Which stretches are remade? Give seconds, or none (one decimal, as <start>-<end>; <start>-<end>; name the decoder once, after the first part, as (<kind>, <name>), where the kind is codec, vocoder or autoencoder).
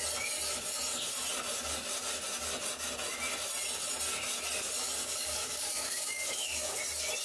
5.0-6.8 (codec, DAC)